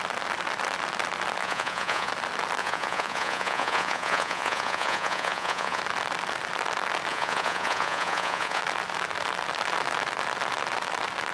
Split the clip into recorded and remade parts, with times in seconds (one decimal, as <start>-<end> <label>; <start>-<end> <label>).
0.0-1.4 recorded; 1.4-2.1 remade; 2.1-2.6 recorded; 2.6-5.8 remade; 5.8-7.1 recorded; 7.1-8.6 remade; 8.6-11.3 recorded